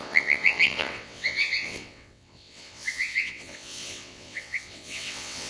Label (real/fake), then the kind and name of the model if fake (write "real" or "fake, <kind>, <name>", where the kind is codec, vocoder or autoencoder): fake, vocoder, WaveNeXt